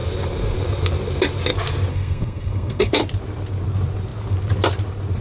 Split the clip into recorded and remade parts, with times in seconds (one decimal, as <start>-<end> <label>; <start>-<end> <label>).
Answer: 0.0-1.9 recorded; 1.9-2.9 remade; 2.9-5.2 recorded